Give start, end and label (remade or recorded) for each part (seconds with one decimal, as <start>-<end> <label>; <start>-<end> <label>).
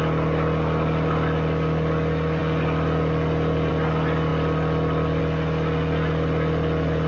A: 0.0-7.1 recorded